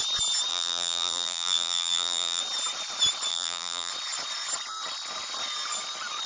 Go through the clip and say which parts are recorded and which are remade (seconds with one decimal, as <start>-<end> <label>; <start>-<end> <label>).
0.0-0.5 recorded; 0.5-2.4 remade; 2.4-3.3 recorded; 3.3-3.9 remade; 3.9-6.3 recorded